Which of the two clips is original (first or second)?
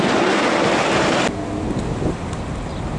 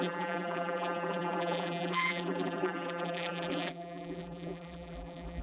first